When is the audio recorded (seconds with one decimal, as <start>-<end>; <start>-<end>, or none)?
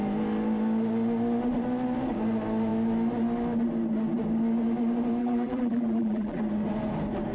0.0-5.2; 6.4-7.3